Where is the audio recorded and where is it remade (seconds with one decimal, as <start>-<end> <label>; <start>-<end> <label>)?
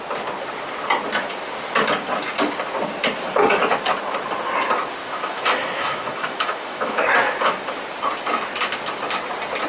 0.0-5.0 recorded; 5.0-7.0 remade; 7.0-9.7 recorded